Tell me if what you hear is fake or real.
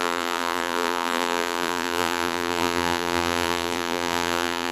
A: fake